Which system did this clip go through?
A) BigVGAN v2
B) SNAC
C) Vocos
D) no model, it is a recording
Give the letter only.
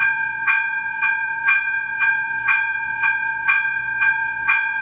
C